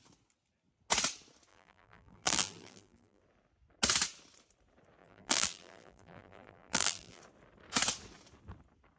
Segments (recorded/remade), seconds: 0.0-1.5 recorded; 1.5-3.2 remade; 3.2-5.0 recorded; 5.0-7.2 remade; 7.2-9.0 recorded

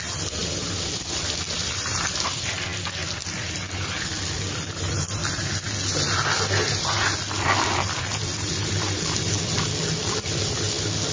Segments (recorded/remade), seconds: 0.0-0.4 recorded; 0.4-2.5 remade; 2.5-5.2 recorded; 5.2-5.7 remade; 5.7-11.1 recorded

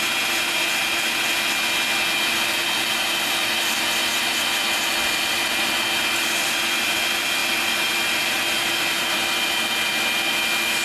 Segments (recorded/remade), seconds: 0.0-10.8 recorded

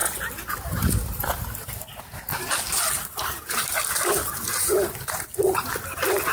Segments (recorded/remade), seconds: 0.0-2.3 recorded; 2.3-3.6 remade; 3.6-4.7 recorded; 4.7-5.7 remade; 5.7-6.3 recorded